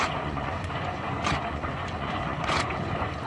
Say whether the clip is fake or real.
fake